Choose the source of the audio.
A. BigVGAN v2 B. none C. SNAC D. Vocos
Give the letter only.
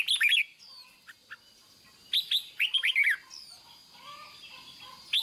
B